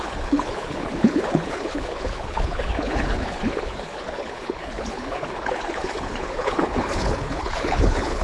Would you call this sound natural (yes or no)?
no